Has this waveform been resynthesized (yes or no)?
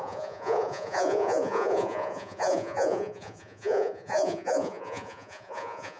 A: yes